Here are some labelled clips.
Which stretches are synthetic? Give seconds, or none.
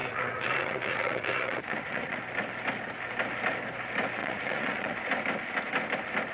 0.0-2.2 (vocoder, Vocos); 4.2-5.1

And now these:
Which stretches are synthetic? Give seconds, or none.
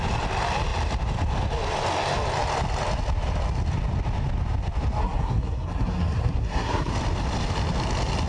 5.0-6.9 (codec, SNAC)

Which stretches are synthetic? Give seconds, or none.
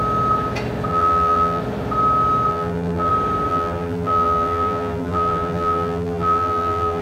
0.9-1.6 (vocoder, BigVGAN v2); 2.5-3.1; 3.5-7.0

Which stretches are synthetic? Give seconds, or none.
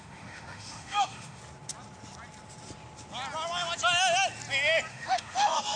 0.0-1.4 (autoencoder, DAC-VAE); 4.9-5.8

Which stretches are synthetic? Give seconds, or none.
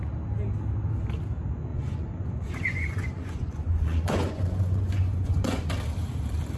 1.7-5.7 (vocoder, Vocos)